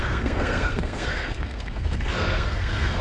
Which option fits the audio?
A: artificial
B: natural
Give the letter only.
A